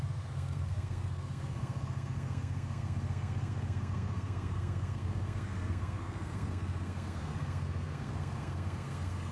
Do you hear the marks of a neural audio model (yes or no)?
yes